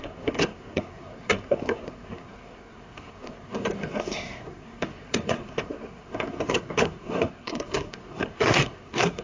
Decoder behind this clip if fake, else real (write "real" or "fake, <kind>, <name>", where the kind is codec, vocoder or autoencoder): fake, codec, SNAC